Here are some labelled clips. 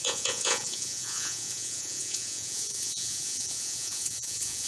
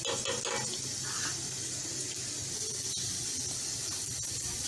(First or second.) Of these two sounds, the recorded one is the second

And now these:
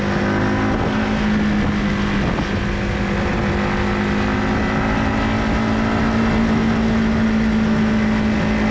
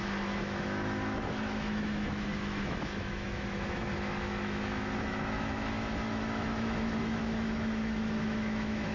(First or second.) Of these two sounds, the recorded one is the first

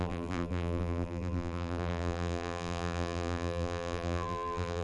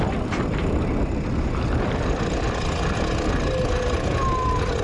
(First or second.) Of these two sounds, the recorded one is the second